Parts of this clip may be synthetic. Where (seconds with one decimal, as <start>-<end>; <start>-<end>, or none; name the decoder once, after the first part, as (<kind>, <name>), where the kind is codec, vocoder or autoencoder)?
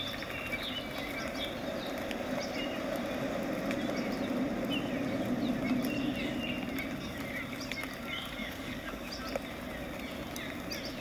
8.4-9.1 (codec, DAC)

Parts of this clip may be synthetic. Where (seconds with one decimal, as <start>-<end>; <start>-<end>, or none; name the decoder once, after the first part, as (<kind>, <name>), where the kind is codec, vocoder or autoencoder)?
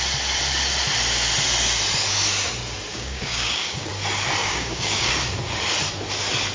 2.9-3.9 (codec, DAC); 4.4-5.1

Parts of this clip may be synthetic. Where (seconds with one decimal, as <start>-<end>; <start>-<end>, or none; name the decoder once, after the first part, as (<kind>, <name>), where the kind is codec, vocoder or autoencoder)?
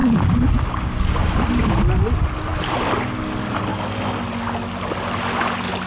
0.0-1.4 (codec, DAC)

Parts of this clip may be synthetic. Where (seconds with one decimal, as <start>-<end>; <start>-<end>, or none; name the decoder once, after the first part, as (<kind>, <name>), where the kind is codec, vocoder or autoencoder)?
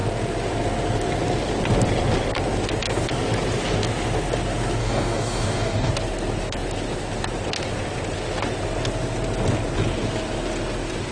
4.8-5.9 (codec, DAC)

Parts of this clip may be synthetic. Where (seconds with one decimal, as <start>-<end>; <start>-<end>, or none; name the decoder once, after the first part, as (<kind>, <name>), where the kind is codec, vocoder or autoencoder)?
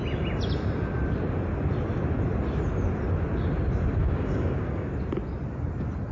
4.0-4.9 (codec, DAC)